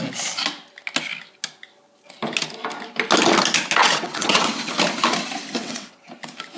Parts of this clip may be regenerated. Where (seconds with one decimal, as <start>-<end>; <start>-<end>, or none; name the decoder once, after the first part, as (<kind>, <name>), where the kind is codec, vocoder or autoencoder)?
3.8-4.7 (vocoder, WaveNeXt); 5.6-6.1